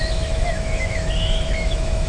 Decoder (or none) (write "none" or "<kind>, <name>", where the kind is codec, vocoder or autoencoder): autoencoder, DAC-VAE